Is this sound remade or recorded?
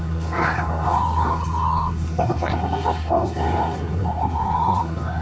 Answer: remade